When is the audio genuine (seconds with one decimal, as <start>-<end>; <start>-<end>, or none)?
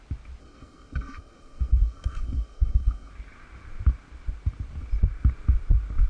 0.0-0.4; 3.1-6.1